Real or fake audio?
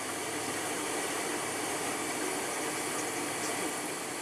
real